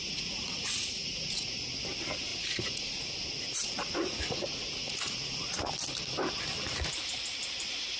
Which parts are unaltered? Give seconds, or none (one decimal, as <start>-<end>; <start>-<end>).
1.6-2.3; 3.1-3.5; 5.6-8.0